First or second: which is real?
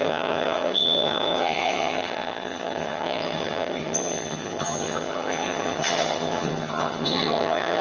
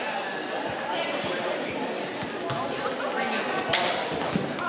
second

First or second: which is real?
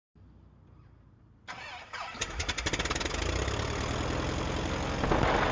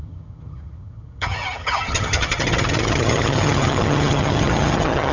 first